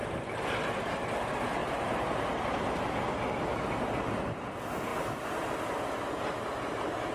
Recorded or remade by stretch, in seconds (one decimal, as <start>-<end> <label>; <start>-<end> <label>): 0.0-7.1 recorded